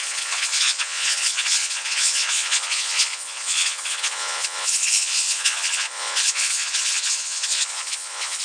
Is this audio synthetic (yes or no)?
yes